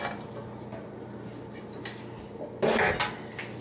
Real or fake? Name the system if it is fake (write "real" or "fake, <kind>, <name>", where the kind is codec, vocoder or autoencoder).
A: real